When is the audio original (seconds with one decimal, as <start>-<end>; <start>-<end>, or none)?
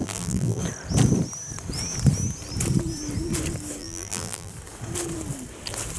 0.6-3.8; 4.5-6.0